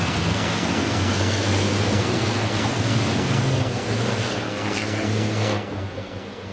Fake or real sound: fake